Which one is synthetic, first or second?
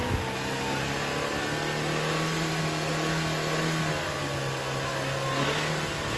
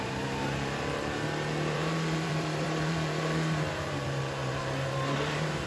second